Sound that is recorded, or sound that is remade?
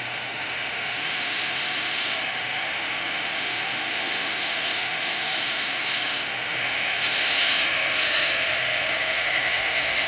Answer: remade